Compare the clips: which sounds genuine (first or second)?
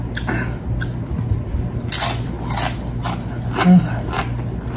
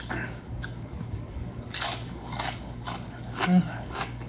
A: first